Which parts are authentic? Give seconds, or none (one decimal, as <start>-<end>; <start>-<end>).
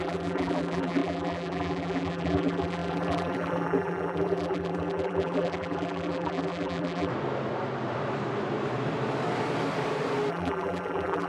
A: 7.1-10.3